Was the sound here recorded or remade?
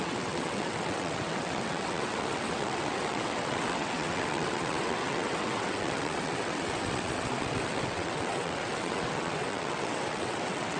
remade